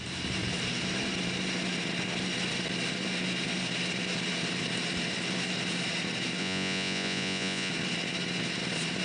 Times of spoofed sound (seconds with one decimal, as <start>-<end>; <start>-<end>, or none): 6.4-7.7